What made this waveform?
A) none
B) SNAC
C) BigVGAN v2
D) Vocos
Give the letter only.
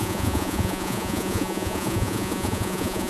D